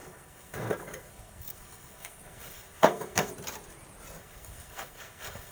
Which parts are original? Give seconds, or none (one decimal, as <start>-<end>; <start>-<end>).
3.3-4.2